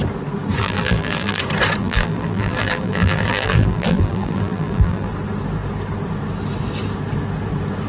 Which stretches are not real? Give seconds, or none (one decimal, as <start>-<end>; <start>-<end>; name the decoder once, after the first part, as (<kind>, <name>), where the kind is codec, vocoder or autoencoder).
0.6-1.4 (vocoder, BigVGAN v2); 1.8-5.1